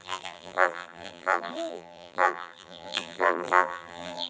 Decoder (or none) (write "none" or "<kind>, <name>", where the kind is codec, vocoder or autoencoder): vocoder, BigVGAN v2